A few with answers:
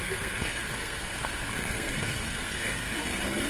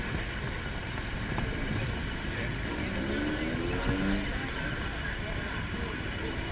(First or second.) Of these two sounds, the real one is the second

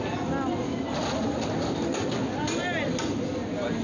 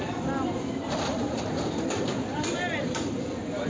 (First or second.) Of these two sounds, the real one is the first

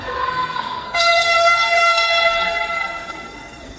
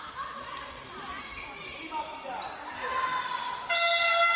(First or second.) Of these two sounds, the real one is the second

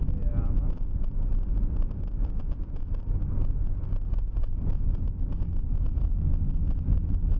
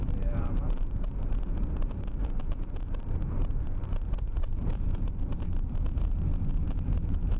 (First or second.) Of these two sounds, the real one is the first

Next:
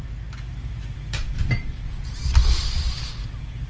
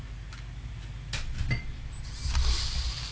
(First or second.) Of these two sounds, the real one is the second